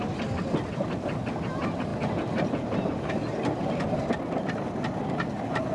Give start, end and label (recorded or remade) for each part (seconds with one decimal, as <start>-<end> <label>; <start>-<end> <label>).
0.0-5.7 recorded